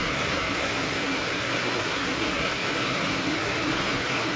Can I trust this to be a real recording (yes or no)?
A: no